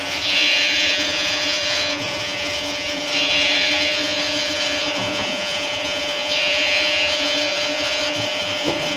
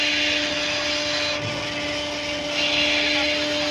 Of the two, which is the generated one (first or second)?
first